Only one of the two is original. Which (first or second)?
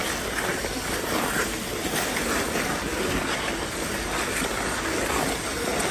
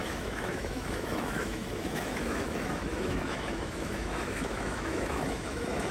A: first